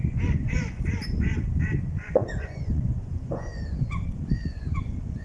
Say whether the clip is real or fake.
fake